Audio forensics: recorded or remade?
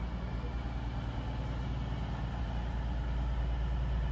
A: recorded